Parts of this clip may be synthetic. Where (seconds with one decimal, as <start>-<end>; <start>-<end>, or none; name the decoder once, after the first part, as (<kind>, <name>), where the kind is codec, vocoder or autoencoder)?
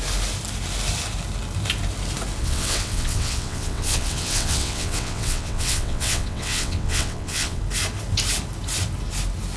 2.4-7.6 (vocoder, WaveNeXt)